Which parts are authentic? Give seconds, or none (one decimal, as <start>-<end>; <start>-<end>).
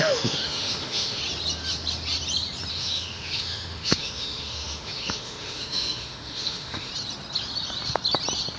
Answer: 1.2-2.7; 6.9-8.6